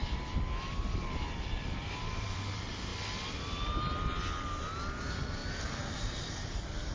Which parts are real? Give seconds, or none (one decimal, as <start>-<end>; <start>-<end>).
2.9-5.0; 5.4-5.9